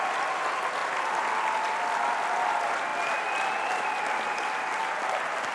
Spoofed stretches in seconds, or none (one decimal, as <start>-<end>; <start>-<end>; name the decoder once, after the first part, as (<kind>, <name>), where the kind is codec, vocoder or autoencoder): none